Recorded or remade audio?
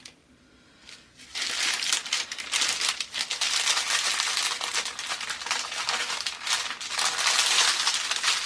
recorded